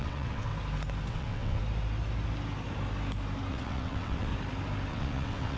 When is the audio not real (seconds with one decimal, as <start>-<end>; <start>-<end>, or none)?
0.0-0.5; 1.1-1.6; 3.5-4.3; 4.9-5.6